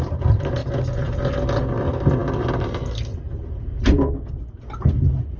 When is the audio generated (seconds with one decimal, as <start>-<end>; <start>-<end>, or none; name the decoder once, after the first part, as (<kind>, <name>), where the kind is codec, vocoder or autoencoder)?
none